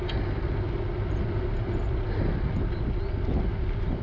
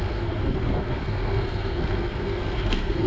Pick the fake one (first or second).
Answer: second